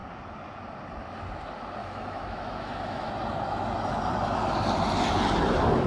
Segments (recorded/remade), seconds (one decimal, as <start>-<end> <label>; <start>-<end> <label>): 0.0-1.8 recorded; 1.8-3.1 remade; 3.1-5.9 recorded